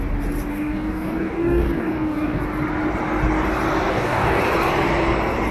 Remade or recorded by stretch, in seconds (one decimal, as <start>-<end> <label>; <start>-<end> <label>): 0.0-0.5 recorded; 0.5-2.4 remade; 2.4-3.9 recorded; 3.9-4.4 remade; 4.4-5.5 recorded